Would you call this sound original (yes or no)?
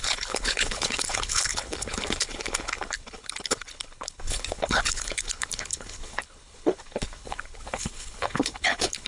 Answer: no